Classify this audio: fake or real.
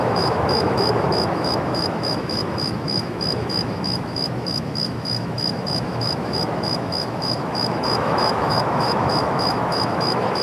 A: fake